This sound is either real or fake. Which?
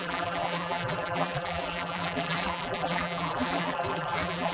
fake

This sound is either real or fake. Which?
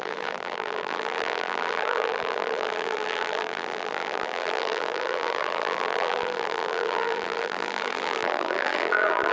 fake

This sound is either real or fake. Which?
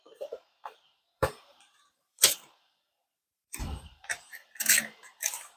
fake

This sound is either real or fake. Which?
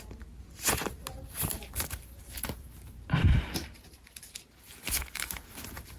fake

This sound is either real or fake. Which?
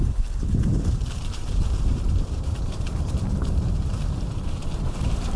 fake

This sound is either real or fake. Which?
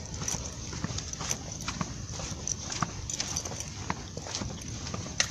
real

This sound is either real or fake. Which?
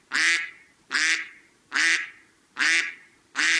real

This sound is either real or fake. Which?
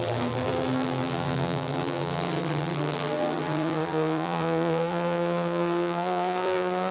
fake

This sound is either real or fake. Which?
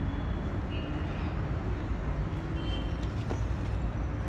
real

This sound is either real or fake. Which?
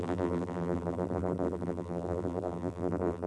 fake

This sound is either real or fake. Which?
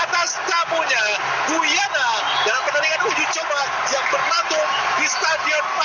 real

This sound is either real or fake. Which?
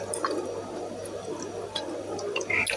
real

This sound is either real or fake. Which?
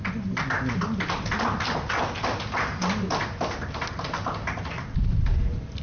real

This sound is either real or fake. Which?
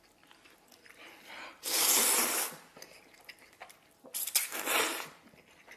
real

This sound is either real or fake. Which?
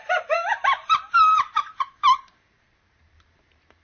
fake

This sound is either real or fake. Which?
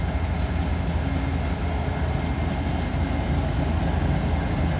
real